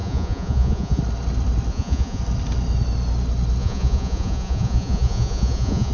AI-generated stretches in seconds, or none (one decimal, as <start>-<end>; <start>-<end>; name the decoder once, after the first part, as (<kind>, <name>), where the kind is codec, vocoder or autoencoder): 0.0-1.0 (vocoder, Vocos); 1.7-2.2; 3.6-5.9